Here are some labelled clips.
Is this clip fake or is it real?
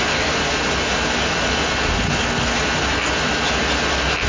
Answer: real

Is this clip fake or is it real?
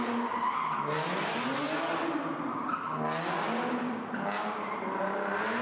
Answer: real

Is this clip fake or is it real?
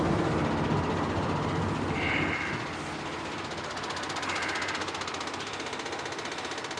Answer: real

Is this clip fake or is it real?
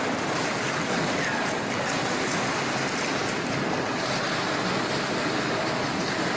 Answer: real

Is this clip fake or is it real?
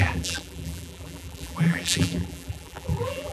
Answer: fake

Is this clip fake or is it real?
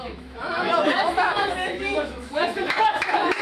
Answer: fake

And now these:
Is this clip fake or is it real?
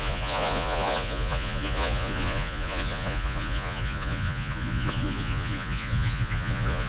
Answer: fake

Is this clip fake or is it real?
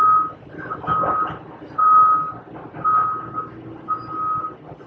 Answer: real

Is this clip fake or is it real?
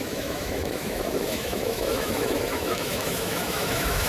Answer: fake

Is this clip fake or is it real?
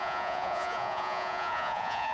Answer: fake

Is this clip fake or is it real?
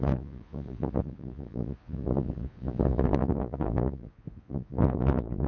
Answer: fake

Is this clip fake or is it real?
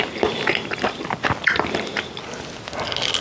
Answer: real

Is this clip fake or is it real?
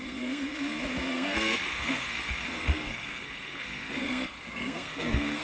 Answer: fake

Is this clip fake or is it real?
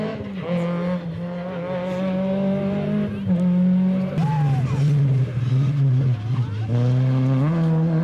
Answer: real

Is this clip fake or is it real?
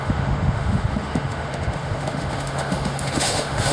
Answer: fake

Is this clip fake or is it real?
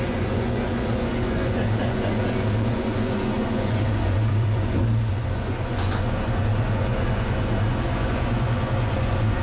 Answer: fake